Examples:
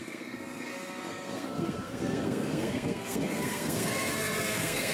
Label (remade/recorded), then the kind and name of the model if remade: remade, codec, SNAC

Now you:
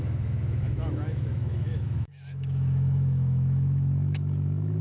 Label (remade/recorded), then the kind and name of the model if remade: remade, autoencoder, DAC-VAE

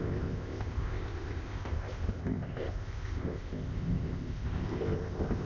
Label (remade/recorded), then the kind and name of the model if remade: remade, codec, ZipCodec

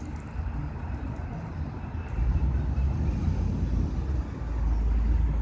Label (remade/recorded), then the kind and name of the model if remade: recorded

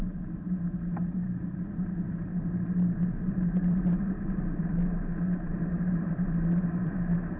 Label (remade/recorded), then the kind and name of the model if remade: remade, vocoder, BigVGAN v2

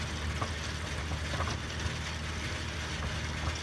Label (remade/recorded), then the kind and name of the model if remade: recorded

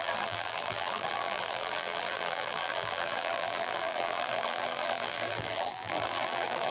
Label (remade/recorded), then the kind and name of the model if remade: remade, vocoder, BigVGAN v2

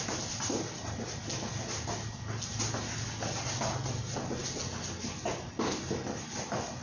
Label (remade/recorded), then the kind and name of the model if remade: recorded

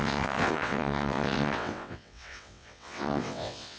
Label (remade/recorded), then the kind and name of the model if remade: remade, vocoder, WaveNeXt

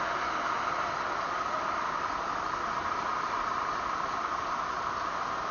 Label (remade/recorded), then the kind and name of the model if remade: recorded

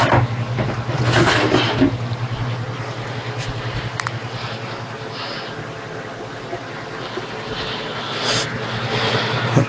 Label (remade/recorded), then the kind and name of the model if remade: recorded